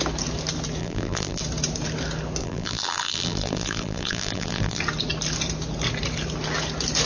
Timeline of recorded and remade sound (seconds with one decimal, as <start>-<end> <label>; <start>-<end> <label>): 0.0-0.8 recorded; 0.8-1.4 remade; 1.4-2.4 recorded; 2.4-4.8 remade; 4.8-7.1 recorded